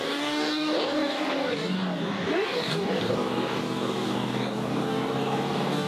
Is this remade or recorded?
remade